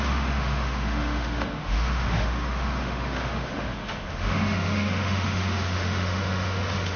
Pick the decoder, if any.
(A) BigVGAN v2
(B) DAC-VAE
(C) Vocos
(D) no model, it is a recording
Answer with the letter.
B